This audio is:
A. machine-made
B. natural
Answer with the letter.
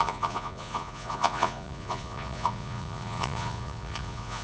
A